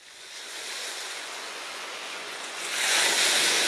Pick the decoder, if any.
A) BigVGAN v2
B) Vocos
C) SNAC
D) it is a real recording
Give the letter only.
B